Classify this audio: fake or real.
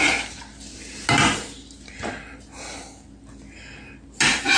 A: real